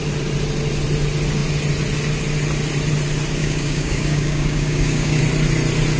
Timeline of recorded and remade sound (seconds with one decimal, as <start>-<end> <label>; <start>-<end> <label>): 0.0-3.4 recorded; 3.4-5.2 remade; 5.2-6.0 recorded

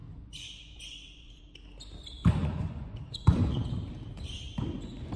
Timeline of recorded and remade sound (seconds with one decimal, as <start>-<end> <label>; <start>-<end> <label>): 0.0-1.4 remade; 1.4-2.2 recorded; 2.2-3.9 remade; 3.9-5.2 recorded

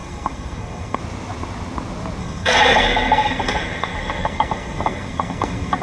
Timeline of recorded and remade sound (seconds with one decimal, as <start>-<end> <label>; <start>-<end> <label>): 0.0-1.0 remade; 1.0-2.2 recorded; 2.2-5.8 remade

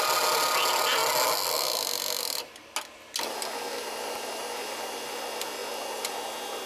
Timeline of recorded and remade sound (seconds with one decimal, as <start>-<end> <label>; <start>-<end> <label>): 0.0-6.7 recorded

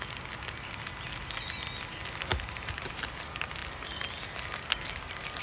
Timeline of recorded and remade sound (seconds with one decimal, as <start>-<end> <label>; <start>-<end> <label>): 0.0-2.3 recorded; 2.3-3.0 remade; 3.0-5.4 recorded

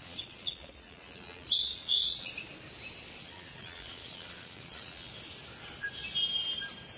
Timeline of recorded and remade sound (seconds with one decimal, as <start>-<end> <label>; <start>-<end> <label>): 0.0-2.3 remade; 2.3-3.2 recorded; 3.2-5.1 remade; 5.1-7.0 recorded

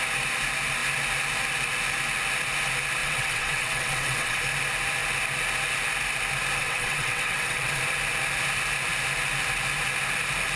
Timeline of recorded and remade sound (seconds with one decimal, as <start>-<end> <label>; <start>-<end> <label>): 0.0-3.0 recorded; 3.0-4.4 remade; 4.4-6.6 recorded; 6.6-7.8 remade; 7.8-10.6 recorded